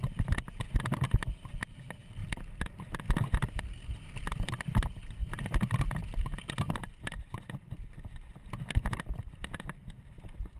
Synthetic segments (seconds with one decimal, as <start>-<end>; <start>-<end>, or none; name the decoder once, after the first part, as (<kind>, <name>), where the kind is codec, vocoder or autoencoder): 2.2-3.0 (vocoder, BigVGAN v2)